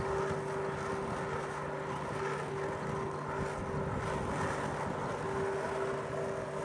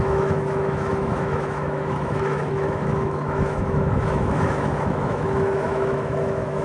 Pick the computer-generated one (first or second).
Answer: second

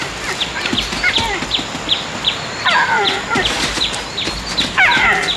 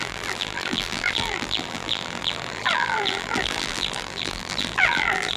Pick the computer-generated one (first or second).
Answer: second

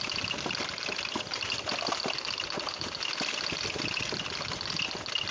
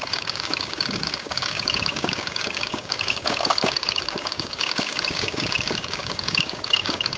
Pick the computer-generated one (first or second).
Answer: second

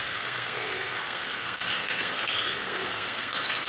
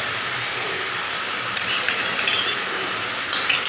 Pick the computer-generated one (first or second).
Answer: first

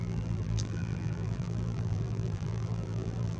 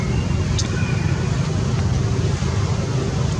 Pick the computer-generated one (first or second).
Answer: first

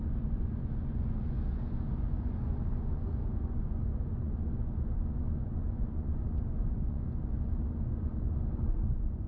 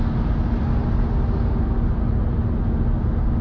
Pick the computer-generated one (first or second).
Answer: first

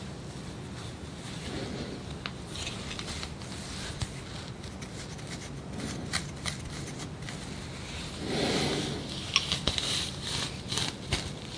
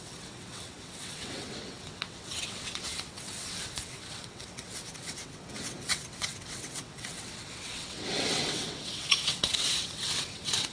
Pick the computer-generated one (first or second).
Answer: second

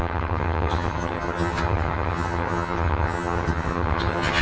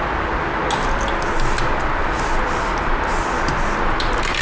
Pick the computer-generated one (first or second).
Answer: first